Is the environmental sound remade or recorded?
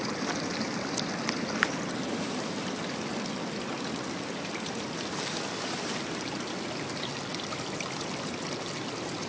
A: recorded